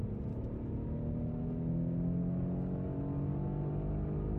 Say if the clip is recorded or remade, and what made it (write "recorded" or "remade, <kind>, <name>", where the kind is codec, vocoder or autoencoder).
recorded